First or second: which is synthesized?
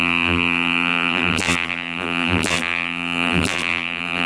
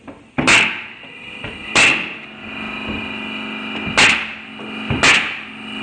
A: first